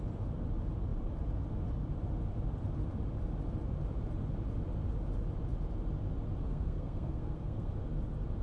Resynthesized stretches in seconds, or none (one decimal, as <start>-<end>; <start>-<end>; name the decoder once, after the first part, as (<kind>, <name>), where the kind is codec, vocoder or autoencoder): 6.4-7.7 (codec, SNAC)